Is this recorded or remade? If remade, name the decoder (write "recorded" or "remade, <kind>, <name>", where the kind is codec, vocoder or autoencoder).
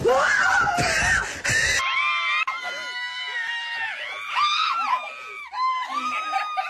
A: recorded